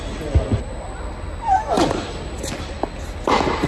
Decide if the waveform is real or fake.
real